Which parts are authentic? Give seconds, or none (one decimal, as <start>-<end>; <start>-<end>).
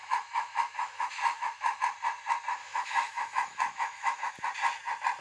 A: 1.8-2.6; 4.3-5.2